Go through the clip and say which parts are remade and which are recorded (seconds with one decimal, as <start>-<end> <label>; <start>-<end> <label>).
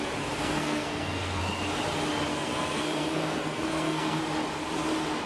0.0-0.4 recorded; 0.4-1.4 remade; 1.4-2.3 recorded; 2.3-4.2 remade; 4.2-5.3 recorded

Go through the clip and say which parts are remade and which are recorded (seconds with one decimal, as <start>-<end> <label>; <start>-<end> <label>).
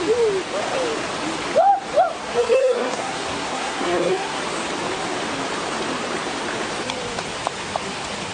0.0-2.2 recorded; 2.2-4.4 remade; 4.4-8.3 recorded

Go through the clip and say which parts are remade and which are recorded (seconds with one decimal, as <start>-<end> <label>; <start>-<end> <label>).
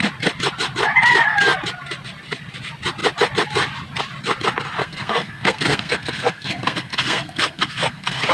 0.0-4.8 recorded; 4.8-8.3 remade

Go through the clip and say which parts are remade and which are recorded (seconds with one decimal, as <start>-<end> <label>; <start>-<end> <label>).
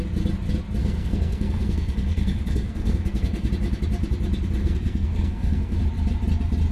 0.0-0.8 recorded; 0.8-3.5 remade; 3.5-4.6 recorded; 4.6-5.8 remade; 5.8-6.7 recorded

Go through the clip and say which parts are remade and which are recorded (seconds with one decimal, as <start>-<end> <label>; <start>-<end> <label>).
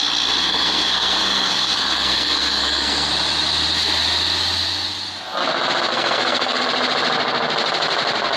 0.0-0.4 recorded; 0.4-3.1 remade; 3.1-5.9 recorded; 5.9-6.6 remade; 6.6-8.4 recorded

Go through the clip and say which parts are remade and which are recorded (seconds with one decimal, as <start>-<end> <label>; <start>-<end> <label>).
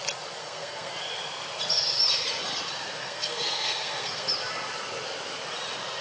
0.0-0.4 recorded; 0.4-0.9 remade; 0.9-3.0 recorded; 3.0-4.3 remade; 4.3-6.0 recorded